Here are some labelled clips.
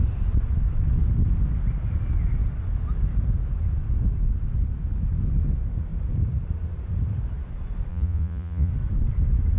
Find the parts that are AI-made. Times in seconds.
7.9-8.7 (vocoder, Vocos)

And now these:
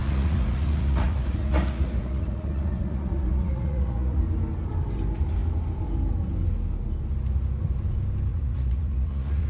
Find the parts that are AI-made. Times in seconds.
0.0-4.2 (vocoder, Vocos); 8.3-9.5

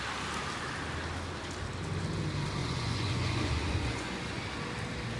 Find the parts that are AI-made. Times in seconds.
2.6-4.4 (vocoder, Vocos)

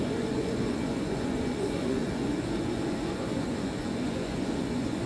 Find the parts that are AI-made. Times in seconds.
0.0-5.1 (vocoder, Vocos)

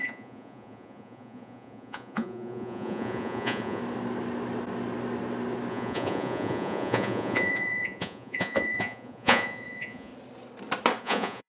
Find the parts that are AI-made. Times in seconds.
0.0-3.8 (vocoder, Vocos); 5.7-10.1; 11.0-11.5